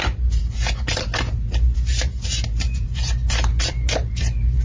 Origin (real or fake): fake